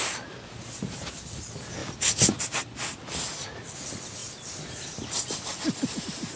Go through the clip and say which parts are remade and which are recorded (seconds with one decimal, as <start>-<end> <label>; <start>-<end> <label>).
0.0-1.8 recorded; 1.8-2.4 remade; 2.4-4.2 recorded; 4.2-6.0 remade; 6.0-6.4 recorded